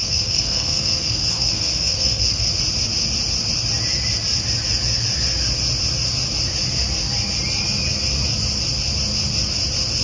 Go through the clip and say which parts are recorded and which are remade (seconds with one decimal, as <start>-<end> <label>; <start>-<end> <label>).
0.0-2.5 remade; 2.5-10.0 recorded

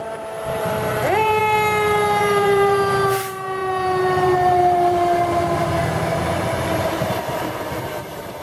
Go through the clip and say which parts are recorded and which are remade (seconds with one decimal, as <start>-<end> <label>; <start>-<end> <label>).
0.0-1.4 remade; 1.4-2.2 recorded; 2.2-8.4 remade

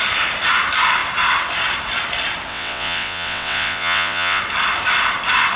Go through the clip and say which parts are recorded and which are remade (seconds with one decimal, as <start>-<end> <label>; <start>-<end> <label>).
0.0-2.5 recorded; 2.5-4.4 remade; 4.4-5.6 recorded